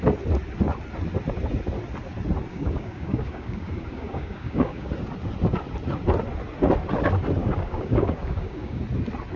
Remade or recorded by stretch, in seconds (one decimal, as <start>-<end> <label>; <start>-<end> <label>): 0.0-2.5 recorded; 2.5-4.9 remade; 4.9-7.4 recorded; 7.4-8.8 remade; 8.8-9.4 recorded